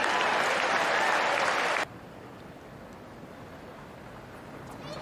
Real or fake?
real